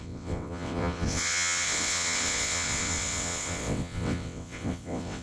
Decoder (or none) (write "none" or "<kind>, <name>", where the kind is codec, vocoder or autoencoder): vocoder, WaveNeXt